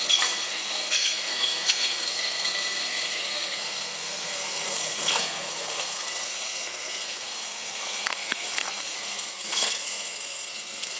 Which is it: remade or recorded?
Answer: remade